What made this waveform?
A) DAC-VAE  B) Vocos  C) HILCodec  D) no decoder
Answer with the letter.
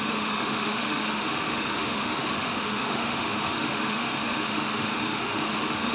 A